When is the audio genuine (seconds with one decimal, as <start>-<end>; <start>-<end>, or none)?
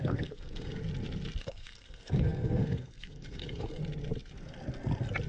0.8-1.4; 3.8-5.3